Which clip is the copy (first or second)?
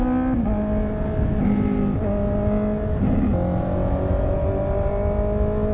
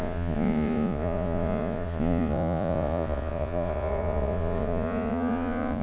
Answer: second